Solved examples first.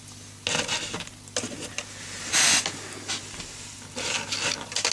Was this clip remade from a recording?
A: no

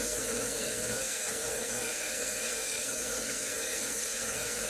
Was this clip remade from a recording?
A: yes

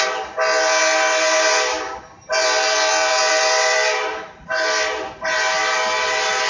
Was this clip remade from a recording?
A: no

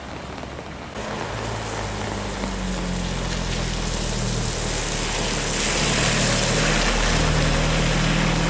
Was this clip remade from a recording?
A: no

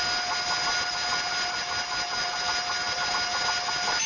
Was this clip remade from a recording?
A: no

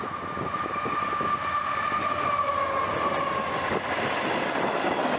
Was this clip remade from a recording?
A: no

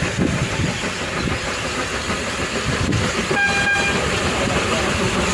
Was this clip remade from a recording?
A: no